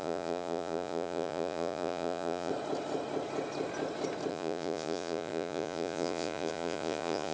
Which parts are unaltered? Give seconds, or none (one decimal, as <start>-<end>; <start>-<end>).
2.5-4.3

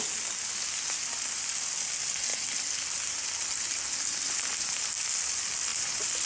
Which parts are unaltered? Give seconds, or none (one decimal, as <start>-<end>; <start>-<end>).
0.0-5.7